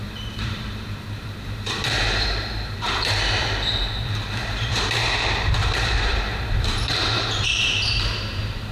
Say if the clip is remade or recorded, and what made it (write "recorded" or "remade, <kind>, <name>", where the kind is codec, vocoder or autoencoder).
remade, vocoder, BigVGAN v2